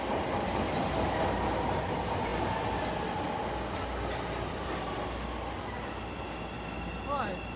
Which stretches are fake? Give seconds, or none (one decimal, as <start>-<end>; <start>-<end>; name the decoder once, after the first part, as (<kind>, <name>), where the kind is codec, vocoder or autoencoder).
none